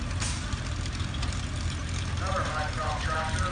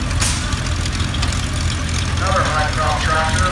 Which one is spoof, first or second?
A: first